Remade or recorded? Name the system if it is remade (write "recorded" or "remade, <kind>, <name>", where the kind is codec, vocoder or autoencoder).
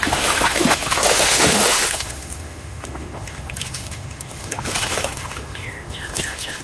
remade, autoencoder, DAC-VAE